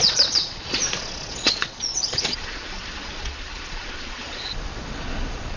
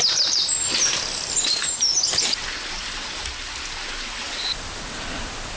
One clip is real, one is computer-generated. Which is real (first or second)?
second